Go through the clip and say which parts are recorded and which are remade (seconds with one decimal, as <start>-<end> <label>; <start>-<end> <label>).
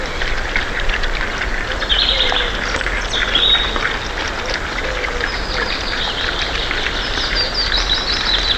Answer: 0.0-8.6 recorded